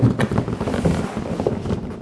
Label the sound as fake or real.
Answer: real